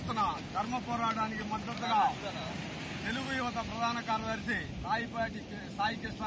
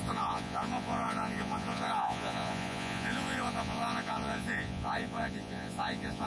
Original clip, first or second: first